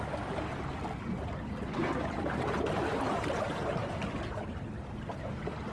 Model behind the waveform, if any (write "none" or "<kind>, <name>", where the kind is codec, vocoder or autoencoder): none